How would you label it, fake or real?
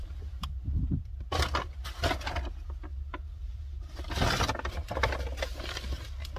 real